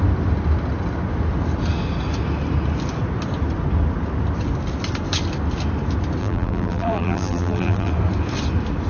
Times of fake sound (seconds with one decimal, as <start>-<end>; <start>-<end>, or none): 6.2-7.9